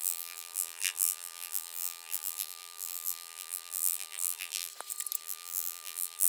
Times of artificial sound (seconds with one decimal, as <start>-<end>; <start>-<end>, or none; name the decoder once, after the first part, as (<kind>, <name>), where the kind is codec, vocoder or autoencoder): 0.0-4.7 (vocoder, BigVGAN v2); 5.2-6.3